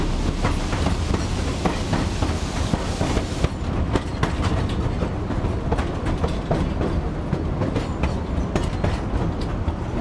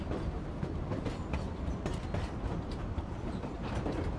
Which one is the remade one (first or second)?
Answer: second